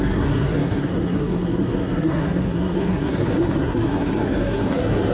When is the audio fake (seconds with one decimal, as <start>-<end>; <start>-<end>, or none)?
0.0-5.1